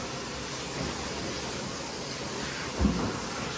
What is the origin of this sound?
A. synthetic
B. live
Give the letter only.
B